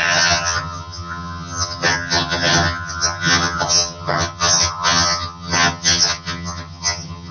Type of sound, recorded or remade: remade